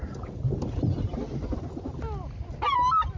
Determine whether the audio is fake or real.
real